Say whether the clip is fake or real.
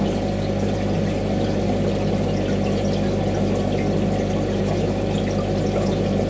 real